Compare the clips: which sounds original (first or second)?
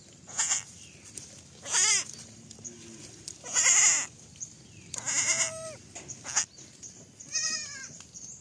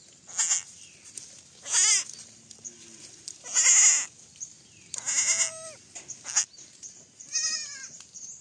second